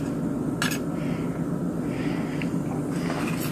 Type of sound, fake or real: real